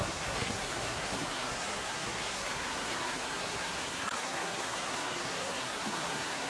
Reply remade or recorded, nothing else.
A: remade